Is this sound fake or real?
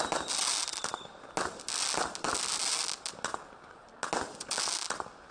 real